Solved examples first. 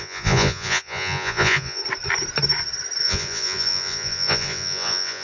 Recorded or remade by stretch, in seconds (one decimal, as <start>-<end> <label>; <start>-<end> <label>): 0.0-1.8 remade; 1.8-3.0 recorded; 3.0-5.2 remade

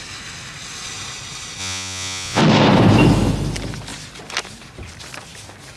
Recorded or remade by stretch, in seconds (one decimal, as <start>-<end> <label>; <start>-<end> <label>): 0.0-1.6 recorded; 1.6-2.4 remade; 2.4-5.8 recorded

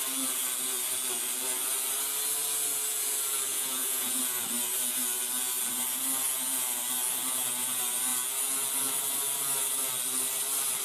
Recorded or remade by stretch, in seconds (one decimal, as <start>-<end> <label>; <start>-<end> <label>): 0.0-3.5 recorded; 3.5-4.2 remade; 4.2-10.8 recorded

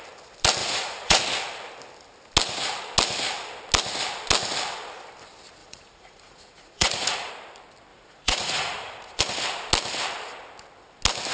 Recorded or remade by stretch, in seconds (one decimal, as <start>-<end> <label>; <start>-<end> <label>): 0.0-0.6 recorded; 0.6-1.2 remade; 1.2-5.6 recorded; 5.6-7.3 remade; 7.3-7.9 recorded; 7.9-9.2 remade; 9.2-11.3 recorded

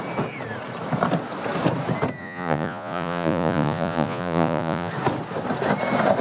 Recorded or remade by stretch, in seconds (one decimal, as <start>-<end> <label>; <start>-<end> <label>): 0.0-2.2 recorded; 2.2-4.9 remade; 4.9-6.2 recorded

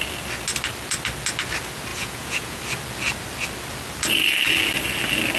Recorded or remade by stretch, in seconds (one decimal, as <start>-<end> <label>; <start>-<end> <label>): 0.0-1.9 recorded; 1.9-2.6 remade; 2.6-5.4 recorded